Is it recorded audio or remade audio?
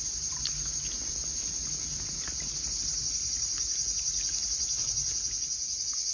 recorded